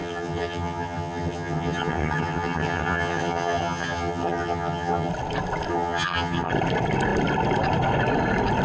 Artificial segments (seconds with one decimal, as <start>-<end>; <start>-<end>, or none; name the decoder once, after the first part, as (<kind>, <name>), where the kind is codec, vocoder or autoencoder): 0.0-5.1 (vocoder, HiFi-GAN); 5.7-6.5